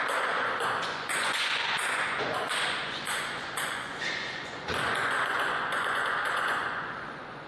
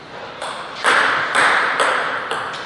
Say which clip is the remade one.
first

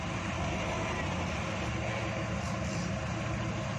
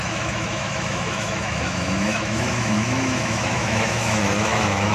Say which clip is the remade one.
second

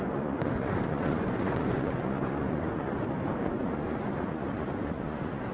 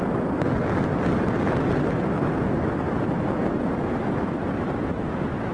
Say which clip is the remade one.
first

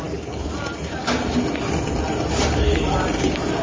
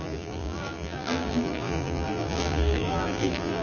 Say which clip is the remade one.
second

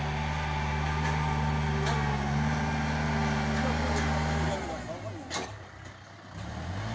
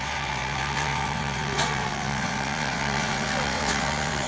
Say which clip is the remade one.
second